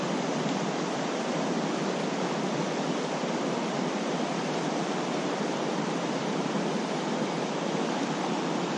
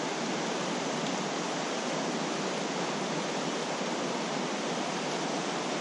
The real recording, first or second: second